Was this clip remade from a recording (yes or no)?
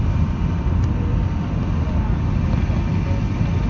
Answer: no